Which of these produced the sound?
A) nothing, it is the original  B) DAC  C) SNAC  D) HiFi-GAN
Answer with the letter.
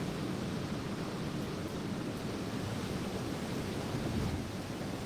A